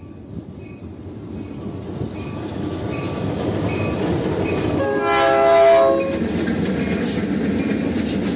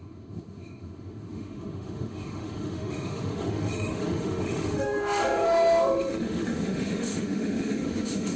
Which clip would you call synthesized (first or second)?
second